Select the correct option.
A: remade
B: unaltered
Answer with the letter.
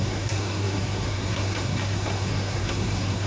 A